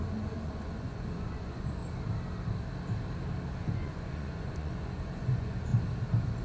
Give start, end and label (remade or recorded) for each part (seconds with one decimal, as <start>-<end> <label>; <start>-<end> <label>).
0.0-1.8 remade; 1.8-3.6 recorded; 3.6-5.7 remade; 5.7-6.4 recorded